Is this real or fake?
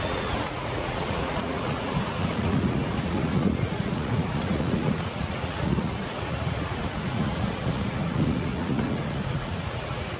fake